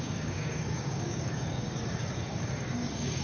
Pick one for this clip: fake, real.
fake